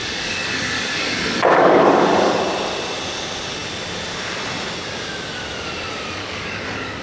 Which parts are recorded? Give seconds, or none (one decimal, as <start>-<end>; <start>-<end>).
2.4-6.2